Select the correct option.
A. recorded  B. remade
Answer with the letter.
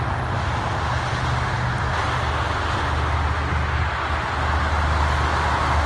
A